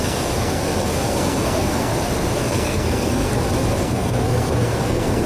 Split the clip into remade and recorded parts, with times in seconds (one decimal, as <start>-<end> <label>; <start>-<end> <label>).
0.0-1.9 remade; 1.9-2.4 recorded; 2.4-3.3 remade; 3.3-3.8 recorded; 3.8-5.3 remade